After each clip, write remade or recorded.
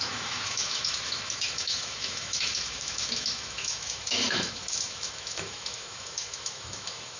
remade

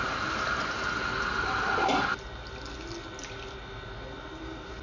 recorded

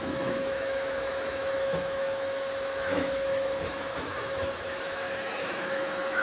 remade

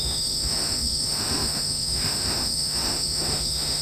remade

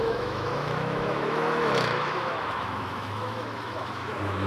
remade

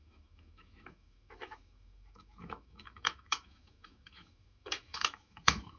remade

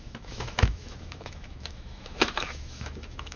remade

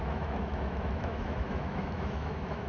remade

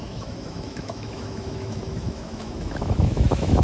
remade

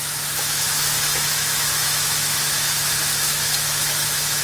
remade